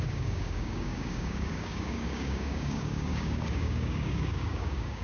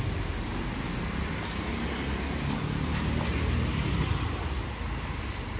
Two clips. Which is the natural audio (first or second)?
second